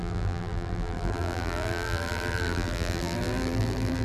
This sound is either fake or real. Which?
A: fake